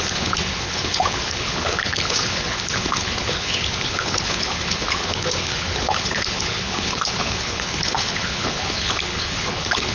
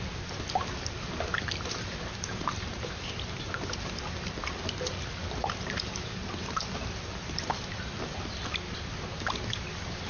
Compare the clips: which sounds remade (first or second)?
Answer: first